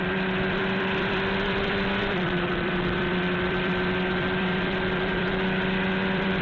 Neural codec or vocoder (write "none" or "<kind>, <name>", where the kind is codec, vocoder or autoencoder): vocoder, BigVGAN v2